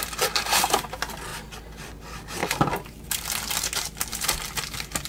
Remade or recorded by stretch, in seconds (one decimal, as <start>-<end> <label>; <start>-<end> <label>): 0.0-1.3 recorded; 1.3-1.9 remade; 1.9-4.1 recorded; 4.1-4.6 remade; 4.6-5.1 recorded